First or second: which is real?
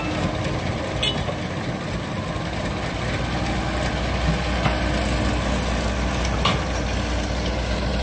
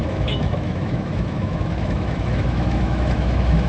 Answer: first